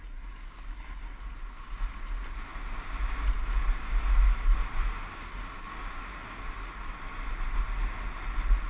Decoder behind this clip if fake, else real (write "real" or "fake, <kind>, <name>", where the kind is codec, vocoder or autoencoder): real